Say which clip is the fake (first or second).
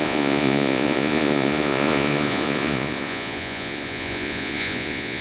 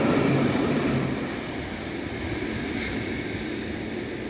first